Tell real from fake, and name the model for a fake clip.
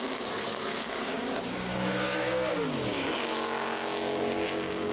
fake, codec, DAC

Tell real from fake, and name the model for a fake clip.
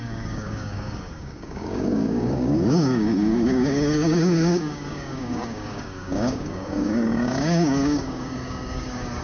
fake, codec, DAC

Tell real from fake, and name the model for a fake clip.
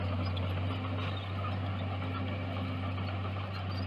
real